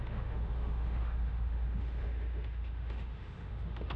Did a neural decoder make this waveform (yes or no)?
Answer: yes